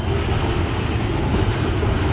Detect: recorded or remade recorded